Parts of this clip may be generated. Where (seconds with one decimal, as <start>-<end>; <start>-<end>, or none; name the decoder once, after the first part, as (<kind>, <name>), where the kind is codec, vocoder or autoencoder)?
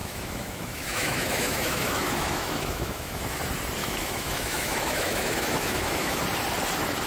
0.0-3.4 (autoencoder, DAC-VAE); 3.8-6.2